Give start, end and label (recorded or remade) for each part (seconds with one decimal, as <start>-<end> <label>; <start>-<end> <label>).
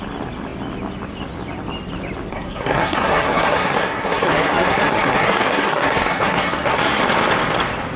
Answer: 0.0-2.3 recorded; 2.3-7.0 remade; 7.0-8.0 recorded